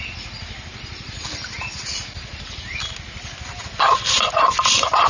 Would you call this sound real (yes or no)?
yes